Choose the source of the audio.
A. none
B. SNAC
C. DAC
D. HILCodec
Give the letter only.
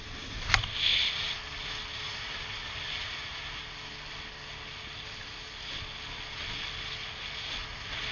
A